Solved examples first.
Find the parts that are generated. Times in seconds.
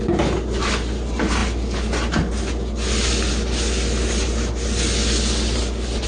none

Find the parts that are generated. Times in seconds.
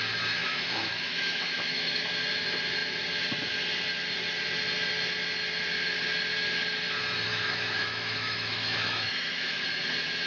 0.4-2.1; 7.3-9.6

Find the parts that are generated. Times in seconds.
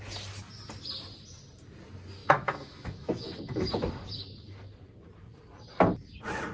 2.2-3.7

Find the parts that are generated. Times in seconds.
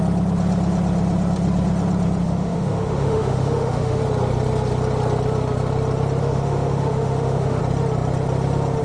2.2-4.0; 6.2-7.6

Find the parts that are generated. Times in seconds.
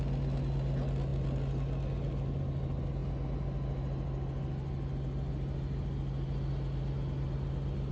none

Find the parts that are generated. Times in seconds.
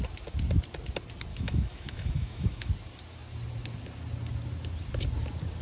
1.3-2.7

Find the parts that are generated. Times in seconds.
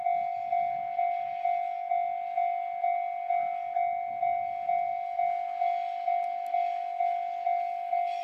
none